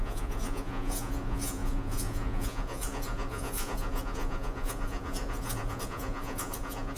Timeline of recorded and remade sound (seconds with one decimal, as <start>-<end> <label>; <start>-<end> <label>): 0.0-7.0 remade